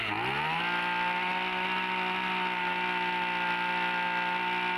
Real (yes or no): yes